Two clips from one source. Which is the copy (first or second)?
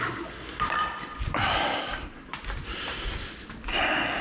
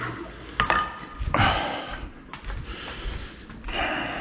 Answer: first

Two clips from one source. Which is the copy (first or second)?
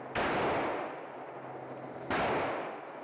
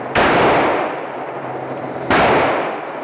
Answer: second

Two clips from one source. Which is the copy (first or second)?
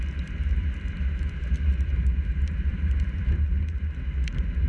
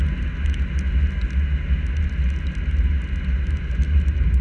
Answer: first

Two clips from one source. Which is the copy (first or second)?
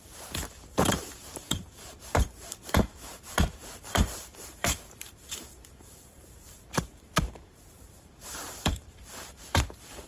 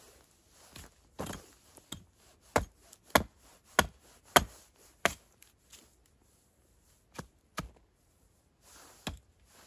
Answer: first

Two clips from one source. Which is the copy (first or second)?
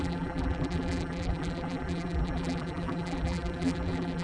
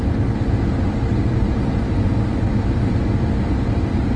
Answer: first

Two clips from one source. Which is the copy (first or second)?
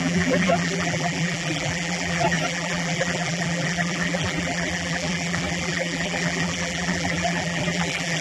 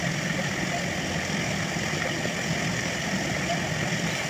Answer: first